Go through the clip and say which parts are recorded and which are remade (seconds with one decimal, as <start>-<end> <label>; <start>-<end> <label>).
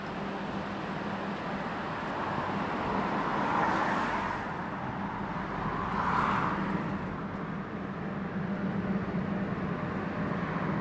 0.0-10.8 recorded